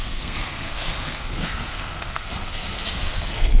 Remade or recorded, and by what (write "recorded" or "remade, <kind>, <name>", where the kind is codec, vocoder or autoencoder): remade, codec, SNAC